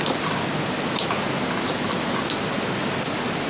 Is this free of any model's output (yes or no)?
yes